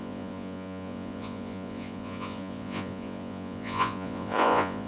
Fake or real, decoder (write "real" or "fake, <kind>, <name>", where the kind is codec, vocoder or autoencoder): fake, vocoder, Vocos